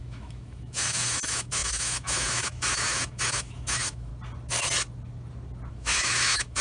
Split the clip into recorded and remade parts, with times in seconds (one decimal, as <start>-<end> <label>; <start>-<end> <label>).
0.0-4.1 remade; 4.1-5.7 recorded; 5.7-6.6 remade